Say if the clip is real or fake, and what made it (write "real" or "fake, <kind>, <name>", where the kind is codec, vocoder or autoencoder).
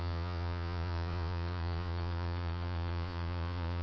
fake, vocoder, Vocos